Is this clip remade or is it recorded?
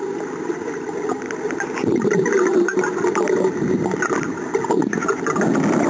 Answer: recorded